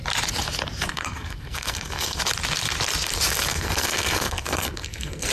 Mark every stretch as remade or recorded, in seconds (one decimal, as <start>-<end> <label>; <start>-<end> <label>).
0.0-0.9 recorded; 0.9-2.2 remade; 2.2-3.5 recorded; 3.5-5.3 remade